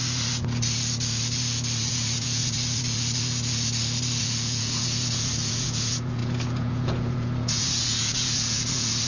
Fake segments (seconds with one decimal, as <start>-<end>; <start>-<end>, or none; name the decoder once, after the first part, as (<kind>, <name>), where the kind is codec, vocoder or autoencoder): 1.9-2.4 (vocoder, Vocos); 4.2-9.1